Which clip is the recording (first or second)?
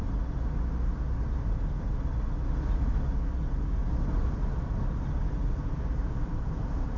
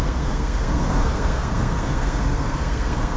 first